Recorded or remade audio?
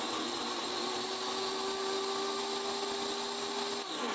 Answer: recorded